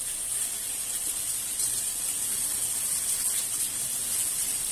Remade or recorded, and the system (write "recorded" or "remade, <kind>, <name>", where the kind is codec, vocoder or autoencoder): recorded